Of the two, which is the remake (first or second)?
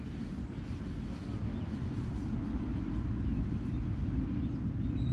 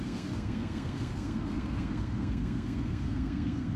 second